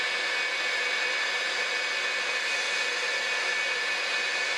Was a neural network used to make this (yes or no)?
no